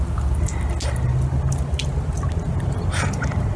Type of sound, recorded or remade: recorded